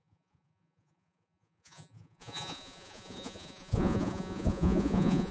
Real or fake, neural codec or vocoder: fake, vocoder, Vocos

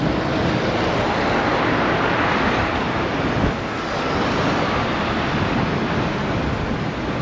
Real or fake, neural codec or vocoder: real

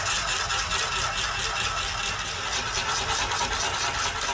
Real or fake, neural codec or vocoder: real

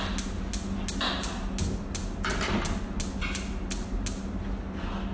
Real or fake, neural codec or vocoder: real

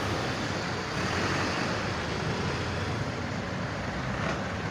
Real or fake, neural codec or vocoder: real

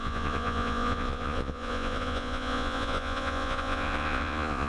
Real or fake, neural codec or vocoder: fake, vocoder, Vocos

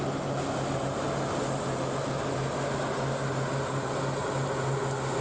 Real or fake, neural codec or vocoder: real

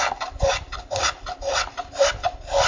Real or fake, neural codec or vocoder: real